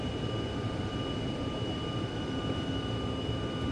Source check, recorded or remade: remade